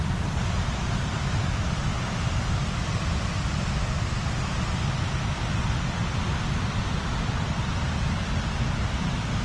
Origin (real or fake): real